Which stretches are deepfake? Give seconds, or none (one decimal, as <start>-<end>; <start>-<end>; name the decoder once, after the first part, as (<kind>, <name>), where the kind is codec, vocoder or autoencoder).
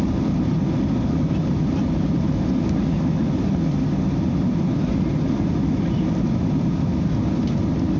none